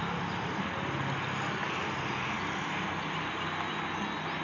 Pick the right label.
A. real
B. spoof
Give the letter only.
A